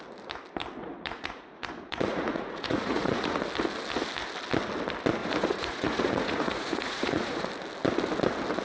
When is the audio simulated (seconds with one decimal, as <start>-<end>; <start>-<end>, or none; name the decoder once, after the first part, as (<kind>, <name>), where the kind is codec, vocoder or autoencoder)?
0.8-3.4 (vocoder, Vocos); 5.2-7.4

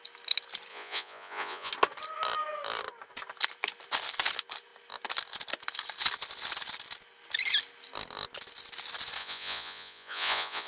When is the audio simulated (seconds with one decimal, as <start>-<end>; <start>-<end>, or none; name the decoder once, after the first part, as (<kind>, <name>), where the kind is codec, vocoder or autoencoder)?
0.7-1.7 (vocoder, Vocos); 9.2-10.7

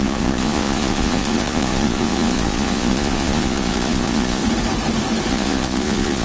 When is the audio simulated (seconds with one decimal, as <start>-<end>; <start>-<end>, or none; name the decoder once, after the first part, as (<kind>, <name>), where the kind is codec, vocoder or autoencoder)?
0.0-4.4 (vocoder, Vocos); 5.3-6.2

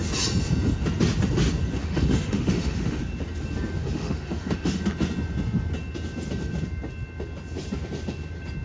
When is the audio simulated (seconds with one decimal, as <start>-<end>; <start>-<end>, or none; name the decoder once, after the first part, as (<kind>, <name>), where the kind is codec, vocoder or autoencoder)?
1.8-3.0 (autoencoder, DAC-VAE); 3.8-4.8

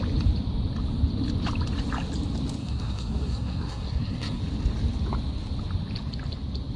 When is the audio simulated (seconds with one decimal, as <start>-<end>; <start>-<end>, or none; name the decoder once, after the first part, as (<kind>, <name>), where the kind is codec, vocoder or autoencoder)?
2.6-4.4 (codec, SNAC)